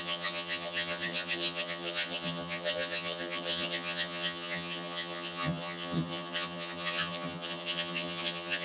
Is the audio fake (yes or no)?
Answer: yes